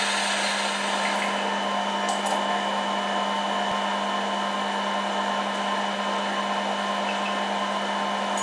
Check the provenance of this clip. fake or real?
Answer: real